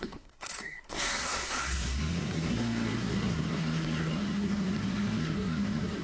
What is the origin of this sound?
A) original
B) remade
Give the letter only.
B